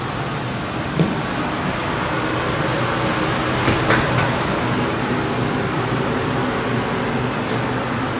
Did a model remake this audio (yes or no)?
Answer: no